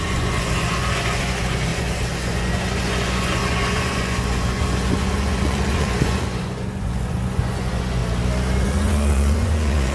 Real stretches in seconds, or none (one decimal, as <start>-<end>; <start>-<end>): 8.0-8.6